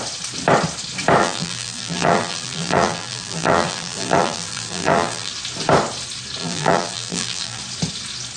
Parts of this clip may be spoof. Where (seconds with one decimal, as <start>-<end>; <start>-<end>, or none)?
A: 1.2-5.3; 6.4-7.6